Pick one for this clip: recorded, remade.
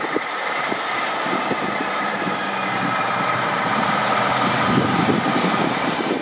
remade